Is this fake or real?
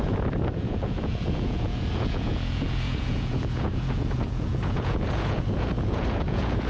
fake